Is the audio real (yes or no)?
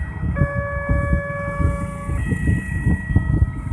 yes